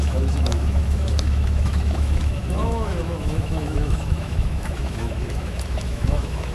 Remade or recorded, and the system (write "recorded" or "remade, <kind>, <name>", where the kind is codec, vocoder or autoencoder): remade, autoencoder, DAC-VAE